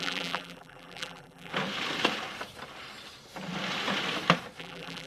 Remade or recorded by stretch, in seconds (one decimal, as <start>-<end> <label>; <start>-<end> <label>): 0.0-1.5 remade; 1.5-4.6 recorded; 4.6-5.1 remade